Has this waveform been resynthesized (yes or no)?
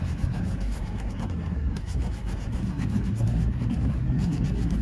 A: yes